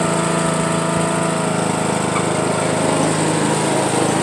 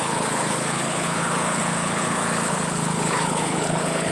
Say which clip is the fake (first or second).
second